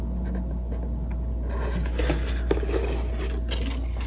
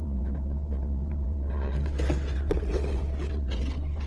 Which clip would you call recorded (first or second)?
first